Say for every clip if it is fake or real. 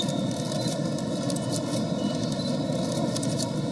real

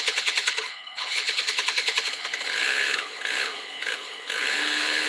fake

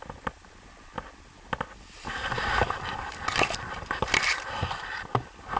real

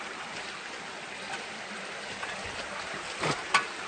real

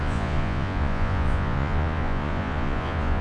fake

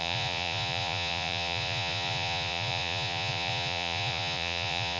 fake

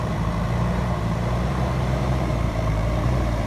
fake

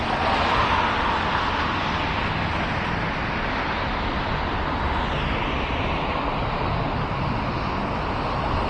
real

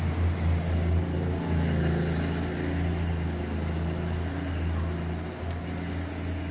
real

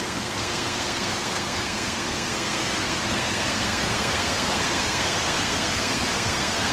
fake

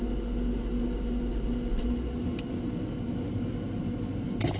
real